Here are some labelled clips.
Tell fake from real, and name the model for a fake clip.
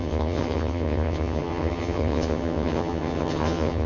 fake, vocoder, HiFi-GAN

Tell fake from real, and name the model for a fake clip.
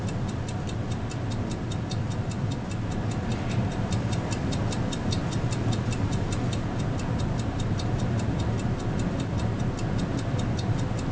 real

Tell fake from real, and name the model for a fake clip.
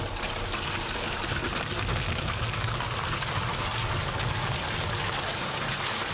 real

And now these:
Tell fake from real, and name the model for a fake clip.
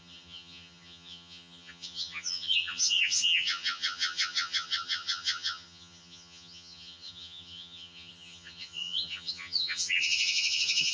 fake, vocoder, HiFi-GAN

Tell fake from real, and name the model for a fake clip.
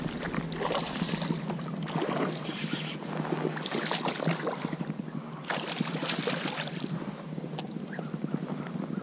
real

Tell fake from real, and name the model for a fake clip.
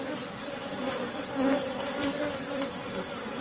real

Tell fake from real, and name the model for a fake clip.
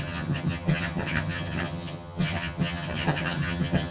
fake, vocoder, HiFi-GAN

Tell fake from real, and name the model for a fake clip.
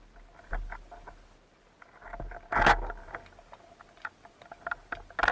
real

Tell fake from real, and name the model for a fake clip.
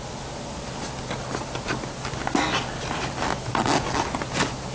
real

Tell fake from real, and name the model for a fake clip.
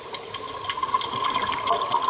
real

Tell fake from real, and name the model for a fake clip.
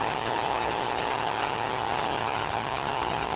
fake, vocoder, HiFi-GAN